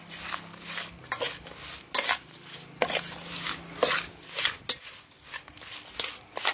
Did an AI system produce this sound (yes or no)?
no